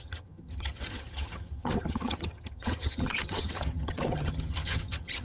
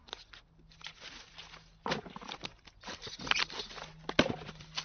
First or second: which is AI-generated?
first